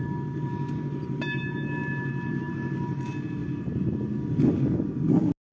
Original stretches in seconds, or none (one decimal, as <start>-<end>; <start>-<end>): 0.0-5.5